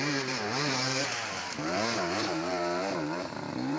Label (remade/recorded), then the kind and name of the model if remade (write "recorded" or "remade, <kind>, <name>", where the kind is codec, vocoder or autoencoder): remade, vocoder, BigVGAN v2